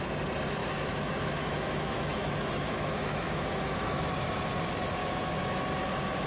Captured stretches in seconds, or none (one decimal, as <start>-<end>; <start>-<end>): 0.0-0.6; 4.1-5.0; 5.6-6.3